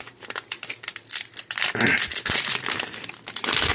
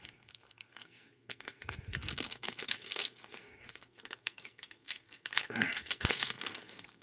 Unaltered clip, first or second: first